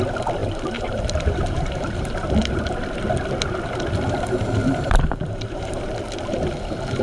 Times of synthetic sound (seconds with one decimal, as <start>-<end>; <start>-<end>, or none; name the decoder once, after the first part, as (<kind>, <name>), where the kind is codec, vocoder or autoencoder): 0.4-2.6 (vocoder, BigVGAN v2); 4.6-5.8